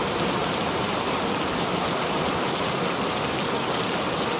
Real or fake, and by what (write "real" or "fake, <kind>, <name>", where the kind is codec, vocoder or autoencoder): real